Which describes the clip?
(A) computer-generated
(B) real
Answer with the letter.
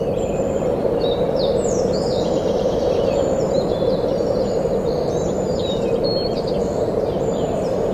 A